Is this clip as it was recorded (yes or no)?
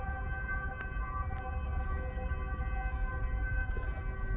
yes